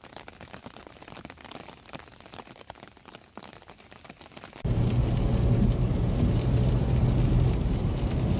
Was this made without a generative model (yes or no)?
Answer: yes